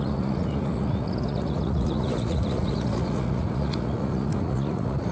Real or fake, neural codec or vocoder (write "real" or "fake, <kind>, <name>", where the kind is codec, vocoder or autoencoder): fake, vocoder, Vocos